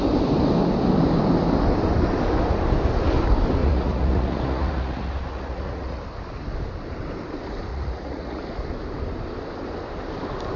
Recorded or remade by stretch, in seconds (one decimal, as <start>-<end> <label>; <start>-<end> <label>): 0.0-3.6 recorded; 3.6-6.0 remade; 6.0-7.7 recorded; 7.7-8.4 remade; 8.4-10.6 recorded